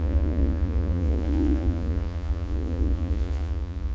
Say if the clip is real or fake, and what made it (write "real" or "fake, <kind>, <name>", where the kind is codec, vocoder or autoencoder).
fake, vocoder, Vocos